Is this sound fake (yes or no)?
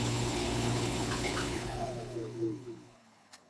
yes